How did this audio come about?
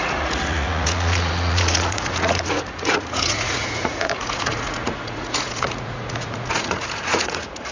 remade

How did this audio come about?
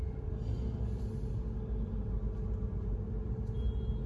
recorded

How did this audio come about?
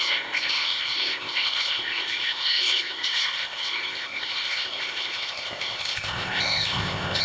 remade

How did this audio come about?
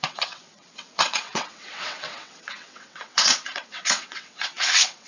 remade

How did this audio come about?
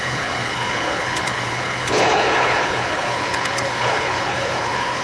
remade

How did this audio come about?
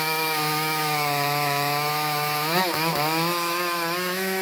remade